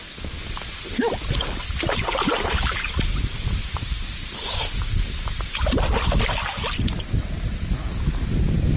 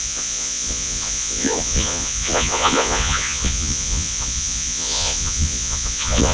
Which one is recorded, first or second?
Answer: first